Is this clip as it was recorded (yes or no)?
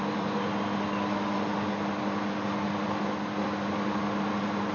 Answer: yes